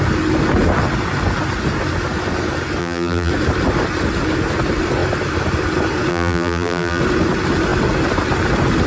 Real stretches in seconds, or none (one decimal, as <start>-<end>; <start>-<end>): 0.0-2.8; 3.3-6.1; 7.0-8.9